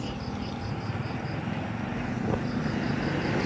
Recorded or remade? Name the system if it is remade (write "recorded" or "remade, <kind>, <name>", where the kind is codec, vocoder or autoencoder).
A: recorded